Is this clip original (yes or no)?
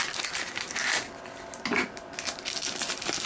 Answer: yes